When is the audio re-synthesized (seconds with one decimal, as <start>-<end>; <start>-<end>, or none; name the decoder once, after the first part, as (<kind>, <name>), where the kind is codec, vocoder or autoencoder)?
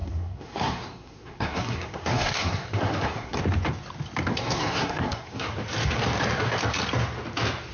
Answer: 0.0-3.4 (codec, SNAC); 4.3-5.5